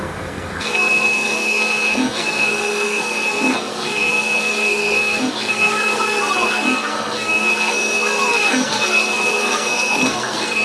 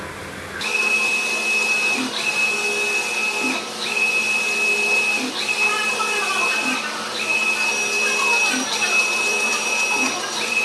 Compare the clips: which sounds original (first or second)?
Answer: second